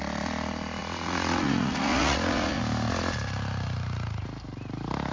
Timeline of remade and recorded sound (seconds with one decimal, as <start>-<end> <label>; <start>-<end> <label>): 0.0-0.8 recorded; 0.8-2.6 remade; 2.6-5.1 recorded